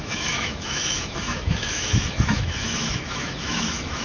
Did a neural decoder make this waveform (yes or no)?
yes